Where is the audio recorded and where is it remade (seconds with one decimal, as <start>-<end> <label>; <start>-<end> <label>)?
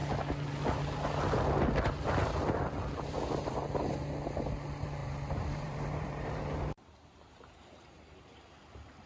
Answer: 0.0-5.0 recorded; 5.0-8.6 remade; 8.6-9.1 recorded